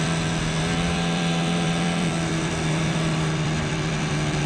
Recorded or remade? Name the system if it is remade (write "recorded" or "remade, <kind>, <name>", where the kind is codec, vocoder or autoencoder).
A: remade, vocoder, BigVGAN v2